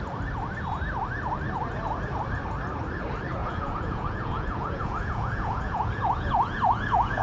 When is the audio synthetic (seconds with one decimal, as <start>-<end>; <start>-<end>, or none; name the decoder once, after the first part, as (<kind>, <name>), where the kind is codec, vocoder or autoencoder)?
3.4-7.2 (vocoder, Vocos)

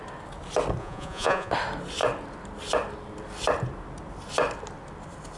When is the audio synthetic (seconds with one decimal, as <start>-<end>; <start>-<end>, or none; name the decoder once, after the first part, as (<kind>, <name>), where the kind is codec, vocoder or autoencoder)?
0.8-1.5 (vocoder, Vocos)

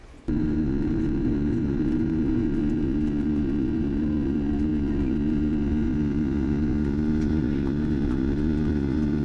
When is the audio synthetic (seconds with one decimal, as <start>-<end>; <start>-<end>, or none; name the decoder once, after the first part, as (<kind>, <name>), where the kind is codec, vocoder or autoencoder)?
0.0-9.2 (vocoder, Vocos)

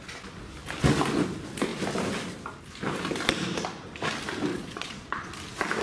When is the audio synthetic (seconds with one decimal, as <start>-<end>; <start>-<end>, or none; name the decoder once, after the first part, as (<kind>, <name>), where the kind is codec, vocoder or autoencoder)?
4.5-5.3 (vocoder, Vocos)

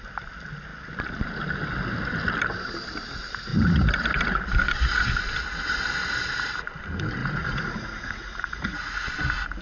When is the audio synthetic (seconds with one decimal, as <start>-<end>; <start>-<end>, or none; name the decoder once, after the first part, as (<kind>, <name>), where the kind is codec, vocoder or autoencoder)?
7.2-9.1 (vocoder, Vocos)

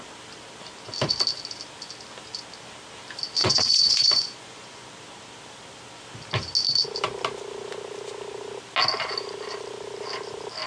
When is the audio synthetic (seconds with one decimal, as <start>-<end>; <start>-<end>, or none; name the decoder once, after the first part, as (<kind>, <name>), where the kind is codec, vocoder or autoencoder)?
3.4-4.9 (vocoder, Vocos)

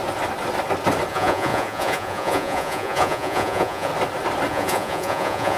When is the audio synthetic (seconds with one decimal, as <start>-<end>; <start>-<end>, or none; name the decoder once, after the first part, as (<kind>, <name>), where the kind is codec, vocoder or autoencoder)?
1.1-3.9 (vocoder, Vocos); 4.5-5.6

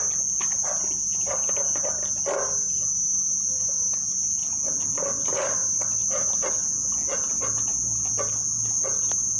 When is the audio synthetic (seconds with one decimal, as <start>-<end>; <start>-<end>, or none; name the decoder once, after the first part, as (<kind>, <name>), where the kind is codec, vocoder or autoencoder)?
none